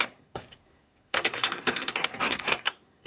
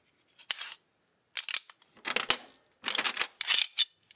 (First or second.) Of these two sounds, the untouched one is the second